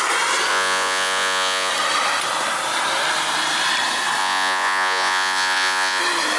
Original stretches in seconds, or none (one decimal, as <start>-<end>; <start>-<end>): 0.0-0.5; 1.7-4.2; 6.0-6.4